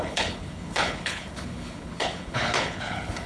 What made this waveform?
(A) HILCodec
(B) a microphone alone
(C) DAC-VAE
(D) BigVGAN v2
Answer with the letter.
A